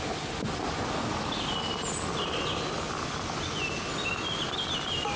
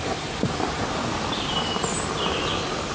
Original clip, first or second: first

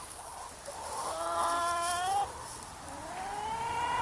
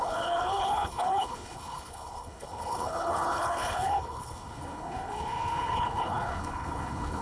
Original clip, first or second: first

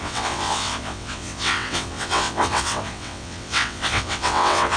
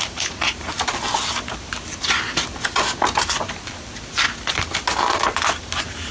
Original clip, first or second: second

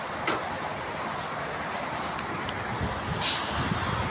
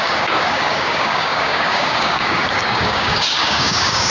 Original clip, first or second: first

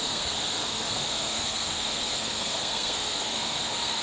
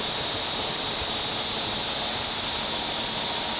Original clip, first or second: second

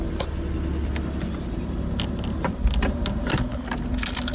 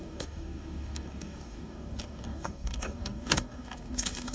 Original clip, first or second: first